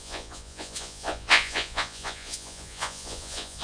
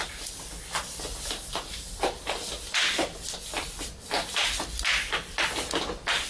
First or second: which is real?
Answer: second